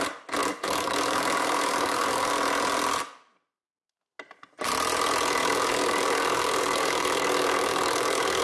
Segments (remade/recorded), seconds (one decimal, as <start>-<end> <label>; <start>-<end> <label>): 0.0-0.4 recorded; 0.4-2.3 remade; 2.3-5.4 recorded; 5.4-8.4 remade